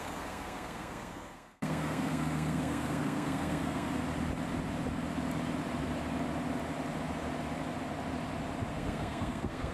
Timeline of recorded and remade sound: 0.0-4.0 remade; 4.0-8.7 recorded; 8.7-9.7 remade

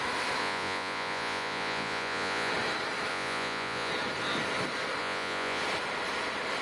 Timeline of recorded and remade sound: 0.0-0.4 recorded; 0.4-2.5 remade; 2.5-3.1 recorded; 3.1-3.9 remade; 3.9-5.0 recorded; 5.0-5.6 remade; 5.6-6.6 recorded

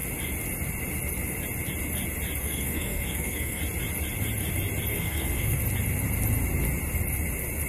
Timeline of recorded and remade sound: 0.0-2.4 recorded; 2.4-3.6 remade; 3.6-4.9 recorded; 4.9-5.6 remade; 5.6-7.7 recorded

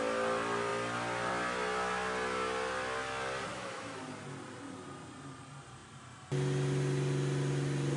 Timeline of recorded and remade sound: 0.0-3.5 recorded; 3.5-4.0 remade; 4.0-8.0 recorded

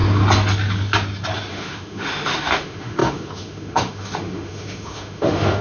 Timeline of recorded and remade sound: 0.0-1.5 recorded; 1.5-5.6 remade

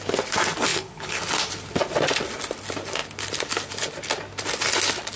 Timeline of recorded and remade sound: 0.0-0.7 recorded; 0.7-1.2 remade; 1.2-5.2 recorded

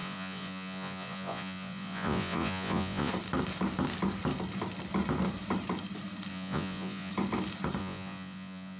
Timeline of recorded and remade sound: 0.0-3.1 remade; 3.1-6.3 recorded; 6.3-7.1 remade; 7.1-7.8 recorded; 7.8-8.8 remade

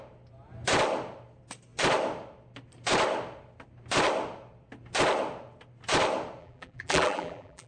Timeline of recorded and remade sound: 0.0-6.4 recorded; 6.4-7.7 remade